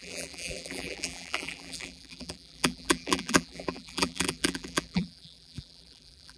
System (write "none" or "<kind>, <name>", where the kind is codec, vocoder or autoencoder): vocoder, BigVGAN v2